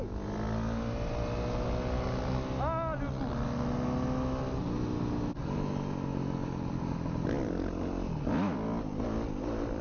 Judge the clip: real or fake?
real